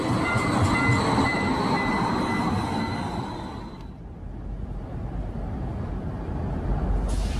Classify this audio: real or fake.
real